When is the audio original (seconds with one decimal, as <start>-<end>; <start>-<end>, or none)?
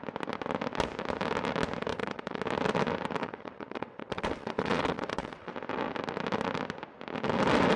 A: 0.0-1.9; 2.4-3.2; 5.5-7.8